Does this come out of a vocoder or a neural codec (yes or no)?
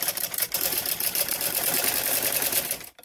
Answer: yes